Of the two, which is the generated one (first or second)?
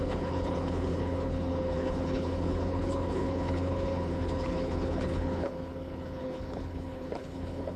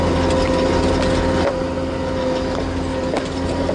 first